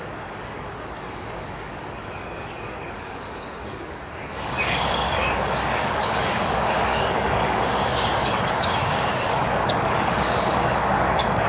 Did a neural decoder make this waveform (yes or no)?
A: yes